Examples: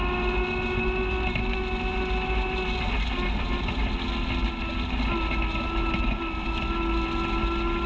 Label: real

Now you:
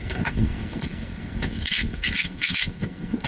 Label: fake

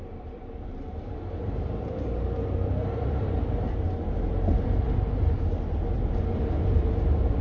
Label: fake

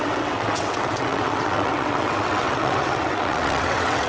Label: fake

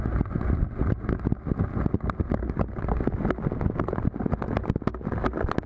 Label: real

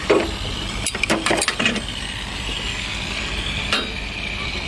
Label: fake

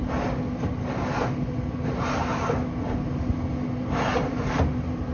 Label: real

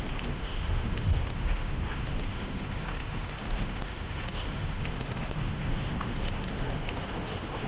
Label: fake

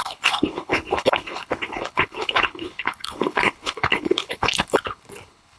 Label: fake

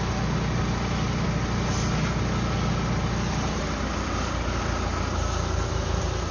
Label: real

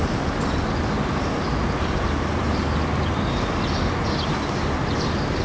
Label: real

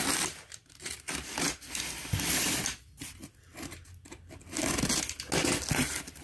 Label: real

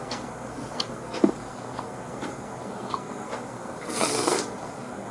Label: fake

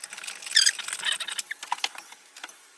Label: real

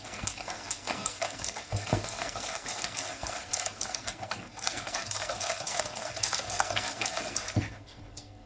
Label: fake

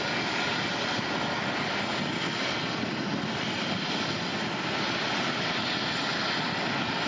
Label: fake